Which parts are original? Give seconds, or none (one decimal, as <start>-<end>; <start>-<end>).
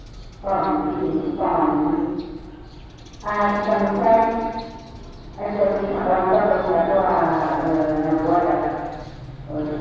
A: 0.0-9.8